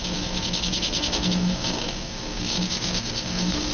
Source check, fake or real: fake